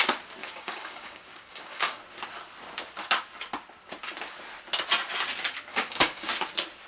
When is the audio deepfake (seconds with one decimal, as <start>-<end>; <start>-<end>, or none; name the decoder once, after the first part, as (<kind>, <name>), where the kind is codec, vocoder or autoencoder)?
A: 0.4-2.0 (codec, DAC); 5.7-6.3